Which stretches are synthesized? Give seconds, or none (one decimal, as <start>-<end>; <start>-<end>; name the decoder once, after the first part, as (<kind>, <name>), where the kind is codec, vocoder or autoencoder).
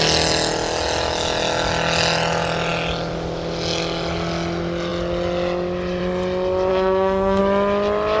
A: 6.7-7.4 (codec, SNAC)